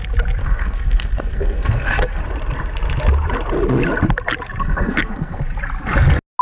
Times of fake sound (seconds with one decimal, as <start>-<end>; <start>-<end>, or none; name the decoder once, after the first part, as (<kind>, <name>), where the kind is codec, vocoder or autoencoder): 0.4-2.2 (codec, SNAC); 4.6-5.4